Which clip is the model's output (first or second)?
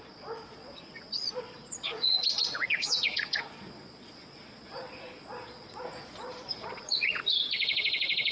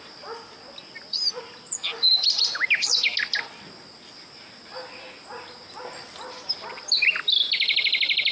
first